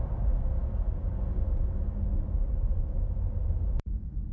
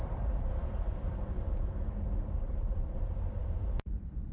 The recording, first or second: first